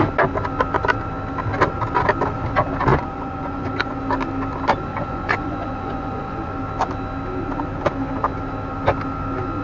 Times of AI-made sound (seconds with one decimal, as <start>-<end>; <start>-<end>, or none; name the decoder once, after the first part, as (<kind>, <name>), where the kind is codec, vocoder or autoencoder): 2.9-4.0 (vocoder, Vocos); 4.9-6.5

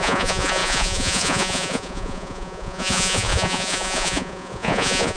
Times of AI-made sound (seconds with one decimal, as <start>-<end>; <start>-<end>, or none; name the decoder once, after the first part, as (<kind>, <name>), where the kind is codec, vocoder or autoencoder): 0.0-5.2 (vocoder, Vocos)

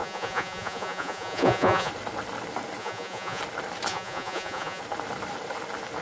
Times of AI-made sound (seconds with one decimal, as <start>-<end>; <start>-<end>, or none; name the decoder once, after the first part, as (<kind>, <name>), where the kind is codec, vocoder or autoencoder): 0.0-1.9 (vocoder, Vocos); 2.8-3.4; 3.9-4.8

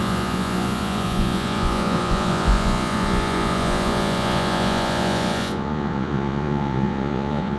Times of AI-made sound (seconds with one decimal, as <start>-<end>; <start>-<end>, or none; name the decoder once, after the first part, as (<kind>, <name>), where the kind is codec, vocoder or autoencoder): 0.0-7.6 (vocoder, Vocos)

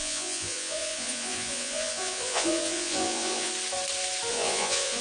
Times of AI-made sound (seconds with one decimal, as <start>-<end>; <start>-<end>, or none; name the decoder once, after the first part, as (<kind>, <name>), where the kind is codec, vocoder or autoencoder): 0.0-3.5 (vocoder, Vocos); 4.3-5.0

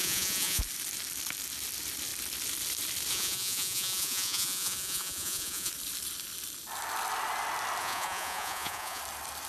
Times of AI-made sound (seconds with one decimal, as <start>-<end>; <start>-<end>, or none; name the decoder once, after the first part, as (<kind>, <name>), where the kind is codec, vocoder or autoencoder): 0.0-0.6 (vocoder, Vocos); 3.1-5.7; 7.8-9.0

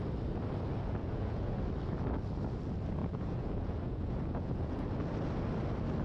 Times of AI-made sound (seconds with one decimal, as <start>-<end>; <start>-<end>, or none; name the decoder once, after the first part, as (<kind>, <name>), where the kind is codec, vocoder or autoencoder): 1.0-1.6 (vocoder, Vocos); 3.0-4.9

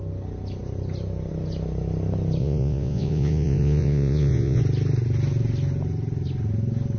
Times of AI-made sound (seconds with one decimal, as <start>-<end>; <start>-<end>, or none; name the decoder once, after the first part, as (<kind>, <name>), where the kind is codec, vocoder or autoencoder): 2.4-4.6 (vocoder, Vocos)